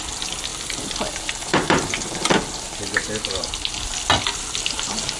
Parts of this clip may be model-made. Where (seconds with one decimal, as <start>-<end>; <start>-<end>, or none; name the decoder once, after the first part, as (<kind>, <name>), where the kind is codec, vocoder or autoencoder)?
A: none